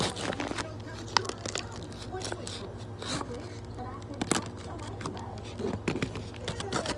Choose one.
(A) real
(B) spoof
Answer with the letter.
A